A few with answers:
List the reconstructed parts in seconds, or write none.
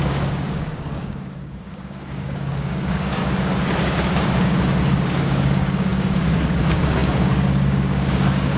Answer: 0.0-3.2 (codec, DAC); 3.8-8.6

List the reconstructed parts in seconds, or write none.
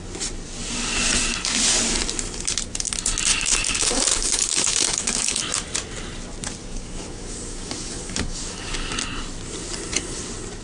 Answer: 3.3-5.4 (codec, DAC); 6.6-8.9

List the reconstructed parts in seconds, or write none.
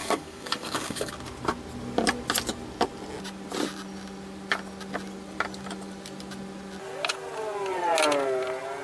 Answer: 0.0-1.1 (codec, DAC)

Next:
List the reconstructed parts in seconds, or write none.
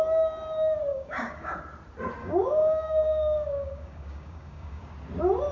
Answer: 0.9-1.5 (codec, DAC); 2.2-4.9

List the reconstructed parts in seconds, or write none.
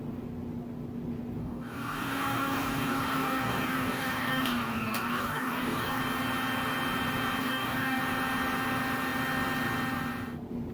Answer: 1.4-6.0 (codec, DAC); 7.4-8.0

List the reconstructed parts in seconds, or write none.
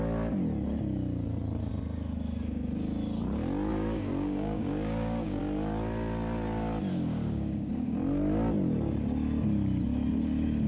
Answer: 3.7-5.4 (codec, DAC); 6.9-7.7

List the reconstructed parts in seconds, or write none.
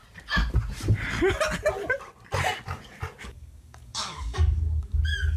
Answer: 3.2-5.4 (codec, DAC)